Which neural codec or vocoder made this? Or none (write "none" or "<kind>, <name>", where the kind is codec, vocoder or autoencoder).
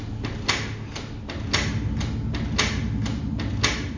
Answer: none